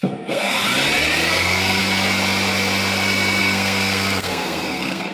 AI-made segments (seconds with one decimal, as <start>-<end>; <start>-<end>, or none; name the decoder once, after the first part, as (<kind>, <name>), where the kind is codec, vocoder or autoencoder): 0.0-0.6 (codec, SNAC); 1.3-1.8; 3.4-5.1